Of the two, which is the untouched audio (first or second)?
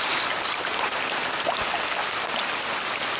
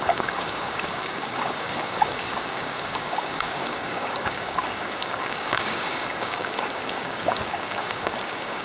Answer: first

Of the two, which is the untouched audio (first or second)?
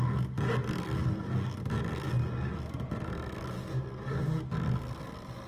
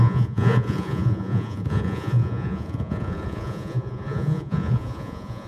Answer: first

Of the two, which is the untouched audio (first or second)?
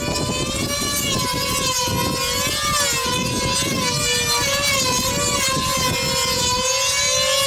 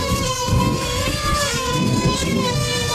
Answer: first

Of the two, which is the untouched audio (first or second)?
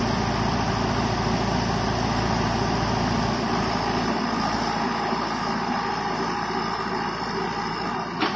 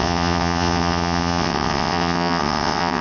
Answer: first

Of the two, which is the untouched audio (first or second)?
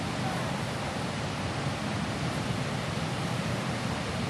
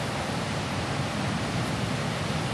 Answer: second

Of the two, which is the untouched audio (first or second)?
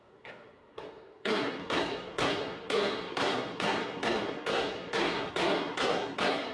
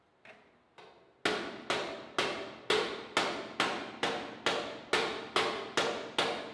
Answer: second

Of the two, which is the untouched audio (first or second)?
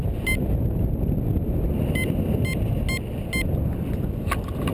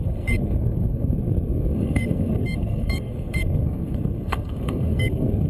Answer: first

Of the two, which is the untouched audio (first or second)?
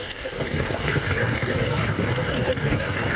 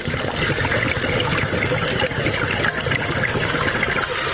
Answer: second